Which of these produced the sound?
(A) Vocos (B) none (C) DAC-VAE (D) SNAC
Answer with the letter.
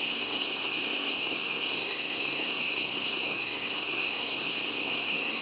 D